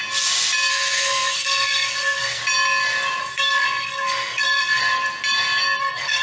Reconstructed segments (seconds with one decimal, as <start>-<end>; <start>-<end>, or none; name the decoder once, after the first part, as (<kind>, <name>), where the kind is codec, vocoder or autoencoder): 0.7-2.4 (codec, SNAC); 3.2-4.8; 5.8-6.2